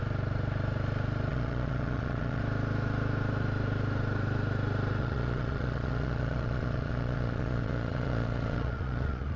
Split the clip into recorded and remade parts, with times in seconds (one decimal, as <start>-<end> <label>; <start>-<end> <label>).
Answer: 0.0-1.3 recorded; 1.3-2.4 remade; 2.4-5.0 recorded; 5.0-9.4 remade